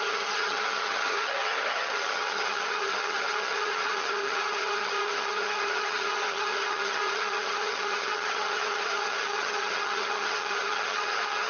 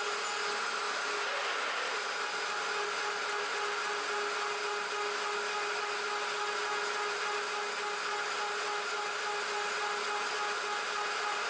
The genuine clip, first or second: second